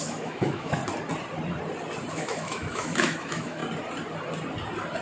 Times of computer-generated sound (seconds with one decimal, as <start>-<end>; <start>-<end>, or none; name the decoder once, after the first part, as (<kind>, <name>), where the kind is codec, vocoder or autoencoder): 0.0-0.8 (autoencoder, DAC-VAE); 2.1-3.6